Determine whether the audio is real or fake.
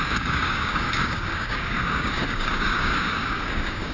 fake